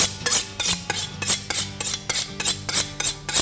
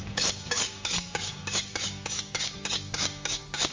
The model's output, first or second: second